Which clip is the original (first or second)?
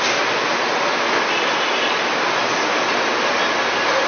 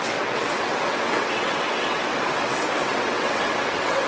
first